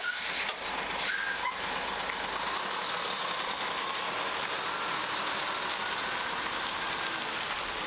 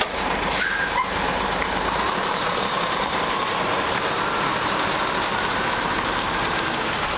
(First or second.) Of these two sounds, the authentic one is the first